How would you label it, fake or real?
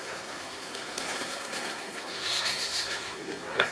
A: fake